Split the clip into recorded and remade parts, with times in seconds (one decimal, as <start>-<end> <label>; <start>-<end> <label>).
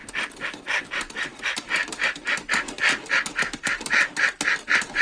0.0-5.0 recorded